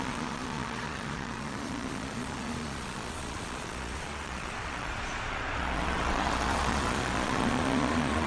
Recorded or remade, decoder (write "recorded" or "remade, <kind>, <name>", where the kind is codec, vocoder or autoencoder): remade, vocoder, Vocos